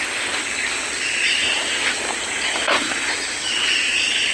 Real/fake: real